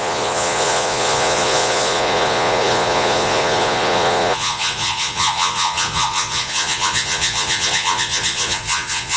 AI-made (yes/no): yes